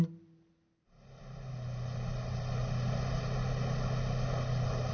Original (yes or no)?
yes